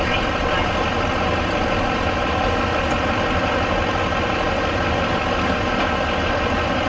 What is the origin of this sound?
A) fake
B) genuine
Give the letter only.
B